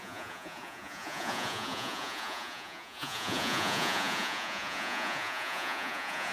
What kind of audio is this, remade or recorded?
remade